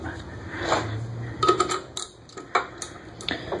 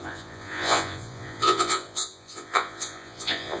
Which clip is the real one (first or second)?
first